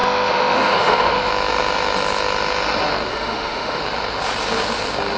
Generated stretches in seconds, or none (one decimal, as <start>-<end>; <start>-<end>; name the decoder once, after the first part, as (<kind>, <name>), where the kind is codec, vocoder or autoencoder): 0.0-1.3 (autoencoder, DAC-VAE); 3.1-3.8